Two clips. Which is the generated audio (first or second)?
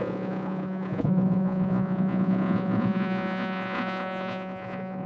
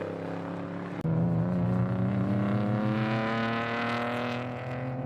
first